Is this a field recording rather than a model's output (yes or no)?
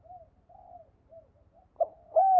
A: yes